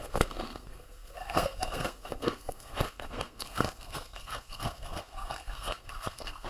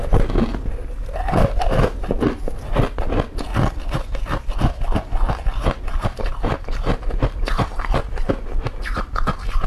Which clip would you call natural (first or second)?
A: second